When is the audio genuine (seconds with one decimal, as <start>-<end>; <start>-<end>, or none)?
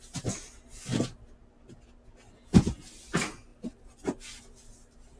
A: 0.0-5.2